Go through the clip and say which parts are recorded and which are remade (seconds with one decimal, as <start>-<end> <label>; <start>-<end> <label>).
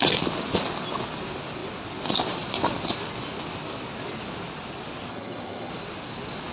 0.0-5.1 recorded; 5.1-5.7 remade; 5.7-6.5 recorded